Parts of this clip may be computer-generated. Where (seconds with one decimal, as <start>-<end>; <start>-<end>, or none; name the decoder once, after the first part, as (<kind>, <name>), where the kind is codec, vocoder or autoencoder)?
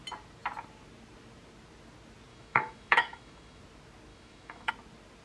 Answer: 2.3-3.6 (autoencoder, DAC-VAE); 4.1-4.7